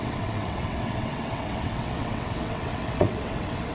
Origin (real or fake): fake